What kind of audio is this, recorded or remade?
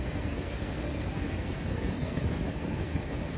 remade